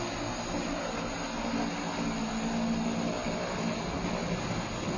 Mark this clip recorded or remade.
recorded